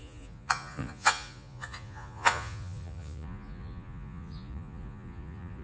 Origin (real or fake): fake